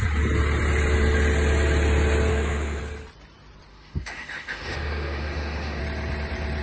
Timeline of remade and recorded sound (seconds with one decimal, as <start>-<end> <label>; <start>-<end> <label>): 0.0-2.3 recorded; 2.3-2.8 remade; 2.8-3.7 recorded; 3.7-5.8 remade; 5.8-6.6 recorded